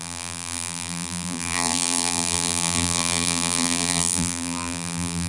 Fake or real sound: fake